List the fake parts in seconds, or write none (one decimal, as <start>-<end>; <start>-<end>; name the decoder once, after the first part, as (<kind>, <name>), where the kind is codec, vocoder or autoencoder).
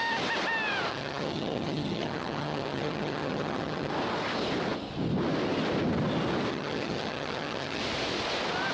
0.9-3.9 (vocoder, HiFi-GAN); 6.5-7.8